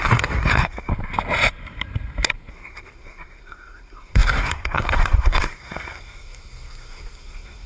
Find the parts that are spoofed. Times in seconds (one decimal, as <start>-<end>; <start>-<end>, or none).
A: 0.0-0.9; 2.5-7.7